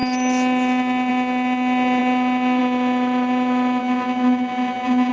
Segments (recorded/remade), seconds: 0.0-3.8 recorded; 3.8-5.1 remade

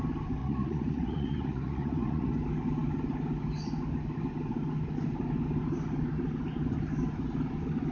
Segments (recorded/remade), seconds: 0.0-0.4 recorded; 0.4-2.3 remade; 2.3-7.9 recorded

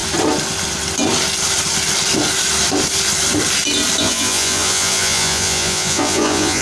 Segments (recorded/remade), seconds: 0.0-4.0 recorded; 4.0-6.6 remade